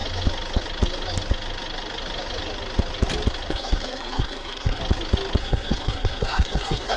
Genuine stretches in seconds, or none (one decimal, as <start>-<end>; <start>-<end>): 0.0-3.5; 4.8-5.4